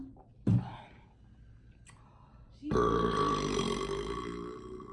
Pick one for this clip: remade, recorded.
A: recorded